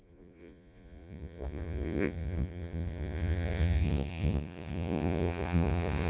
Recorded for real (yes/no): no